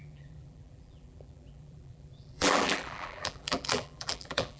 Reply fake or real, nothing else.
fake